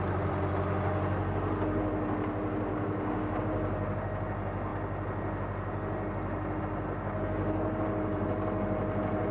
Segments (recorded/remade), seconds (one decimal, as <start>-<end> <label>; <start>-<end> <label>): 0.0-2.7 recorded; 2.7-3.4 remade; 3.4-9.3 recorded